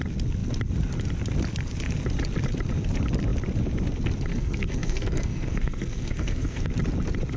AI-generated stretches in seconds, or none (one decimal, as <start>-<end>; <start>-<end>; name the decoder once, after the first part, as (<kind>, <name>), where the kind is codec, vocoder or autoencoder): 4.3-6.7 (codec, SNAC)